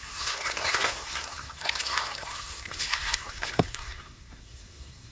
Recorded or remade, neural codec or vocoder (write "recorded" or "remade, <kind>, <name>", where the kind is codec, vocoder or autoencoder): remade, codec, SNAC